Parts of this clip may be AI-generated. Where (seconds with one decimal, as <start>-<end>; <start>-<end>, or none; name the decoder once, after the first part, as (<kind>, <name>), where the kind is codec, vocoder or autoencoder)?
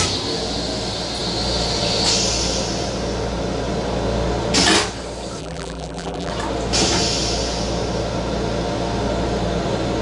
5.4-6.3 (vocoder, BigVGAN v2)